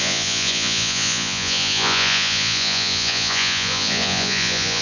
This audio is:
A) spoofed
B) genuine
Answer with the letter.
A